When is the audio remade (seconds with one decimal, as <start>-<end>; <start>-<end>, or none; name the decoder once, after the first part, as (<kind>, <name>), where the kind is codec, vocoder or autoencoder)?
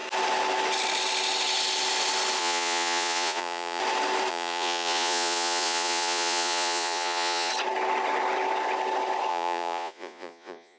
2.4-3.8 (vocoder, Vocos); 4.3-7.5; 9.3-10.8